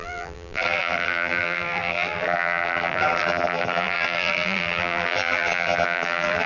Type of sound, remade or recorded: remade